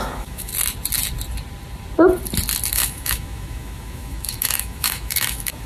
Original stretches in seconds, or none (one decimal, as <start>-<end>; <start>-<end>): 0.5-2.7